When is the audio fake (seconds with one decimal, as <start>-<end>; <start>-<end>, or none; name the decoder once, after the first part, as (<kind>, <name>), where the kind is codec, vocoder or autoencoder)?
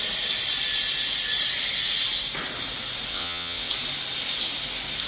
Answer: 3.1-3.7 (vocoder, WaveNeXt)